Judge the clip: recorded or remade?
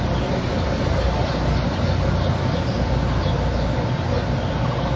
recorded